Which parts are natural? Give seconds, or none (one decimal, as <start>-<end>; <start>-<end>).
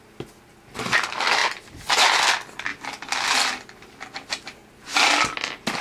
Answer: 0.0-5.8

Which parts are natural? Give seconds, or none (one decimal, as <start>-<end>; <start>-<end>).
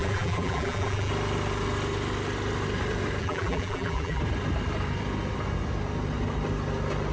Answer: 1.1-3.2; 4.2-7.1